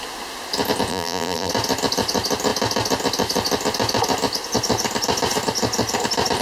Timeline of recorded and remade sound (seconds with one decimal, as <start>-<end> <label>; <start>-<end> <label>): 0.0-0.9 recorded; 0.9-1.5 remade; 1.5-6.4 recorded